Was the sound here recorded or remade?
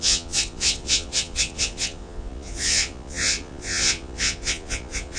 remade